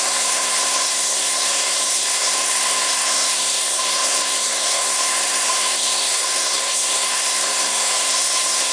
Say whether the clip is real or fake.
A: fake